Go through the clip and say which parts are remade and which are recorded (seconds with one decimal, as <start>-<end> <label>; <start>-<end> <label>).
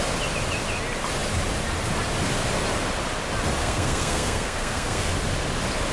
0.0-3.6 recorded; 3.6-5.1 remade; 5.1-5.9 recorded